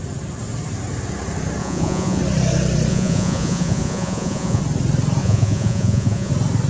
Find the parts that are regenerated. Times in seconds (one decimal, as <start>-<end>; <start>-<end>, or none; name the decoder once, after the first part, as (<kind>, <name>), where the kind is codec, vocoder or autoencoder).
1.6-2.2 (vocoder, Vocos); 2.9-4.6; 5.2-6.3